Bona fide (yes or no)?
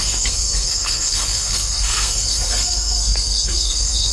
no